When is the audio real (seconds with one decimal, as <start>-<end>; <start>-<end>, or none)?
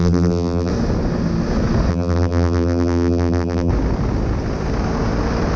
0.7-1.9; 3.7-5.6